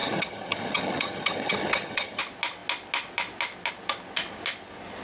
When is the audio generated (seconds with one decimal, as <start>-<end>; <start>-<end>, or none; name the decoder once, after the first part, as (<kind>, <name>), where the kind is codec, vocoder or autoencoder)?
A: 0.0-2.2 (vocoder, HiFi-GAN)